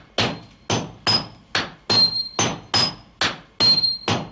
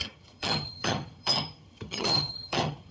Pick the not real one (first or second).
second